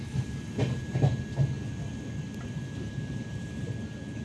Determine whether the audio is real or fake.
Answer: real